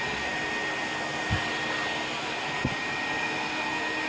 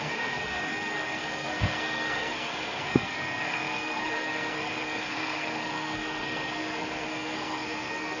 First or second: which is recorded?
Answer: first